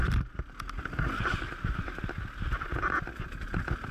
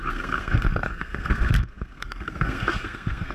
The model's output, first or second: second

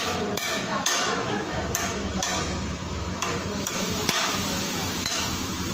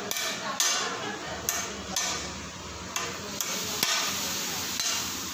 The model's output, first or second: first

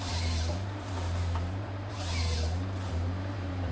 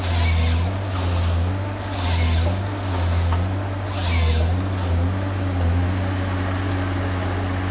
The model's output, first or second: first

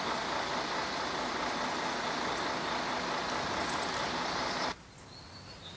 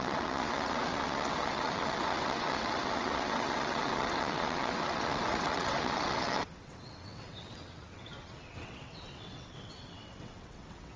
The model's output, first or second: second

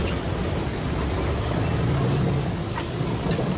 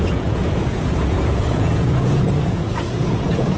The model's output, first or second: second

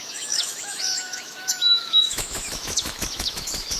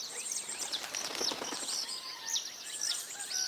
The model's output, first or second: first